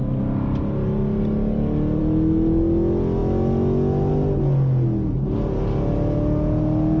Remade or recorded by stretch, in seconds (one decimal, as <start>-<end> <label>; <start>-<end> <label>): 0.0-7.0 recorded